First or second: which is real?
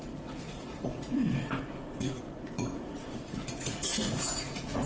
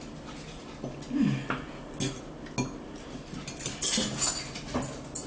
second